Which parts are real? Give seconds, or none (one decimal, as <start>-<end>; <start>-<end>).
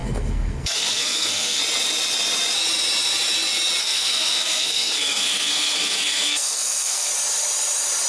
1.6-3.8; 7.1-8.1